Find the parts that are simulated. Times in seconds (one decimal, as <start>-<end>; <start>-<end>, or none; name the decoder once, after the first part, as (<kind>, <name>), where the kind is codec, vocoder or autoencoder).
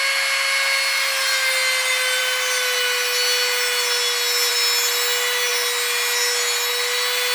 none